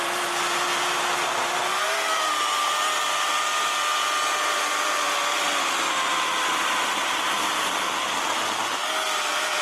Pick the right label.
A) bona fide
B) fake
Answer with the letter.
B